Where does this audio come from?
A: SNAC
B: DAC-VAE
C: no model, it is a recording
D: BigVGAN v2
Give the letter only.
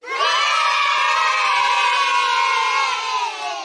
C